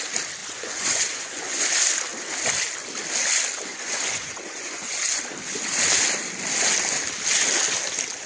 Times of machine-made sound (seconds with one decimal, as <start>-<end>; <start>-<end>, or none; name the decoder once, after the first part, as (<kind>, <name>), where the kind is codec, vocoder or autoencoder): 0.4-1.6 (vocoder, Vocos); 3.7-5.0